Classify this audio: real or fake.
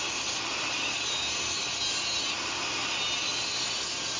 real